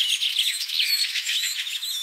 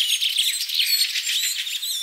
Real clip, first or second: second